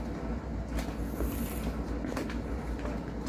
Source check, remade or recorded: recorded